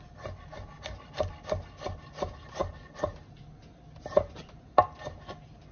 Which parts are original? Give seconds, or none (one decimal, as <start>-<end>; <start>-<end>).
0.0-5.7